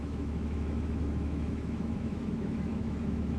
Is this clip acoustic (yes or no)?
no